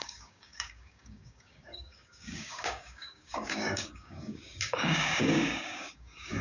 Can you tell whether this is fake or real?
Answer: fake